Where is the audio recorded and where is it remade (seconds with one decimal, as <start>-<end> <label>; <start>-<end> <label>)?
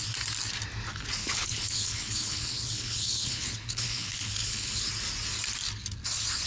0.0-1.2 recorded; 1.2-4.9 remade; 4.9-6.5 recorded